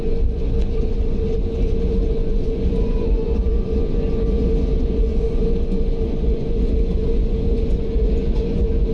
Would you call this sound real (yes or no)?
no